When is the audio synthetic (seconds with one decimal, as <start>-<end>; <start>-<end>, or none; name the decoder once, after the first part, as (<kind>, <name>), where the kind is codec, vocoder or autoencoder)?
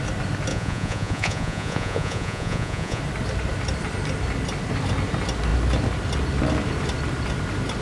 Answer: 0.5-3.0 (vocoder, Vocos)